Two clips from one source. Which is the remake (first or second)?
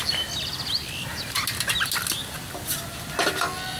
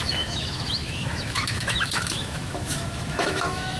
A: second